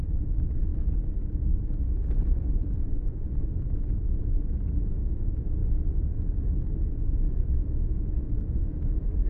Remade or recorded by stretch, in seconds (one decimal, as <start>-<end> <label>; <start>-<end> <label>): 0.0-0.7 remade; 0.7-4.9 recorded; 4.9-5.6 remade; 5.6-7.4 recorded; 7.4-9.3 remade